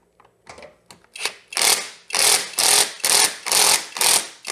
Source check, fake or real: real